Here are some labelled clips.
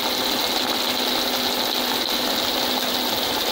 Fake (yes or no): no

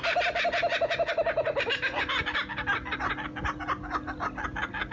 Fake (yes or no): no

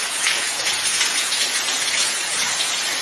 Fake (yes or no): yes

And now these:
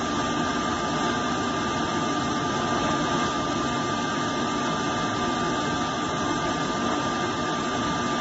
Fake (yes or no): no